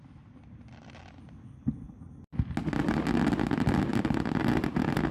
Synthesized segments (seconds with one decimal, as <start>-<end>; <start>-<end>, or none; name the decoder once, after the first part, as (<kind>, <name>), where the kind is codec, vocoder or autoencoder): none